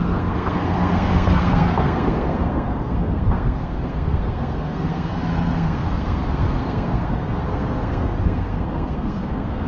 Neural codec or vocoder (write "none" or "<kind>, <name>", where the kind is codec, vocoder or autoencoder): codec, SNAC